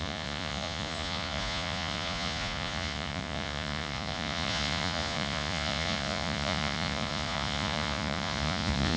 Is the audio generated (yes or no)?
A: yes